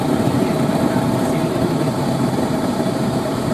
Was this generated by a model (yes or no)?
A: yes